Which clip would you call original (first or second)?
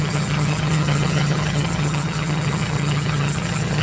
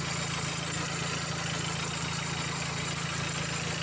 second